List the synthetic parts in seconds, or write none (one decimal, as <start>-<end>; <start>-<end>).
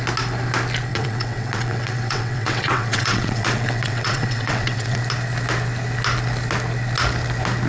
0.9-5.0